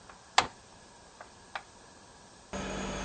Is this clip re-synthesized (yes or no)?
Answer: no